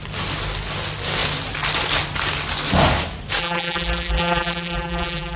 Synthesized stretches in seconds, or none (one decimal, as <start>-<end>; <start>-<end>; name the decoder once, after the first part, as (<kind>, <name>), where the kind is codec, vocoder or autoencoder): 3.4-5.4 (vocoder, BigVGAN v2)